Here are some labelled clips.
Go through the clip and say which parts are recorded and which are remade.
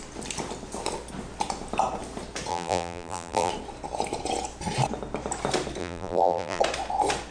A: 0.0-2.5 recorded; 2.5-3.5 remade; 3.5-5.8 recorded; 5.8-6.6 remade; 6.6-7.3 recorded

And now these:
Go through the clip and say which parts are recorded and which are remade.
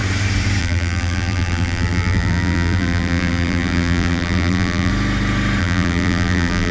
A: 0.0-0.6 recorded; 0.6-4.9 remade; 4.9-5.6 recorded; 5.6-6.7 remade